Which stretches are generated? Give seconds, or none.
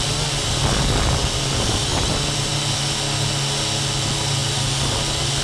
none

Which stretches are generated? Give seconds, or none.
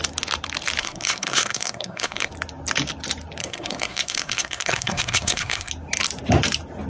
0.8-2.3 (codec, SNAC); 3.4-5.7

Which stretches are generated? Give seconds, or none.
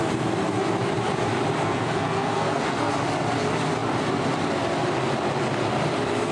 1.6-2.9 (codec, SNAC)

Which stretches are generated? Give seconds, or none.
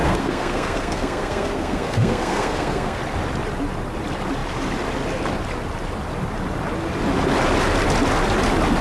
0.0-3.0 (codec, SNAC)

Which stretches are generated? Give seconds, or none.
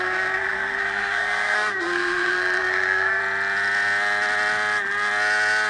0.0-3.2 (codec, SNAC)